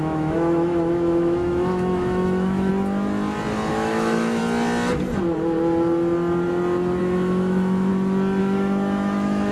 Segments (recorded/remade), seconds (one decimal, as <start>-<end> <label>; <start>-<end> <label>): 0.0-2.7 remade; 2.7-3.7 recorded; 3.7-4.4 remade; 4.4-7.0 recorded; 7.0-7.9 remade; 7.9-8.4 recorded; 8.4-9.5 remade